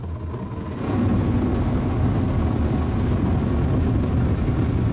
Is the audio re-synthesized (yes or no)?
no